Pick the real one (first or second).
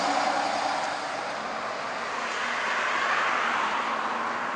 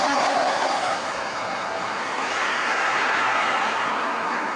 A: first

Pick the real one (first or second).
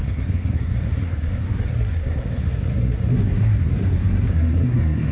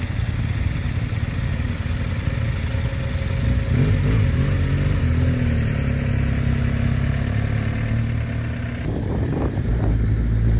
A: second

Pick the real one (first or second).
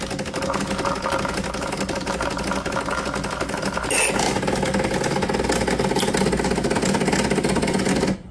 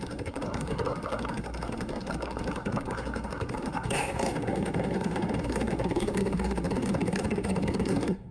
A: first